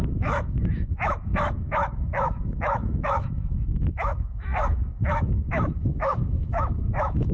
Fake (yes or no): yes